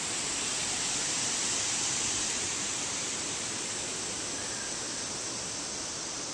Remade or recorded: recorded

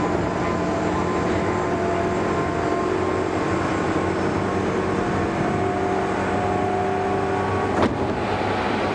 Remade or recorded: recorded